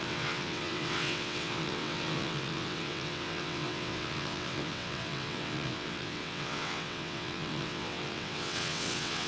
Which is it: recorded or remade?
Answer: remade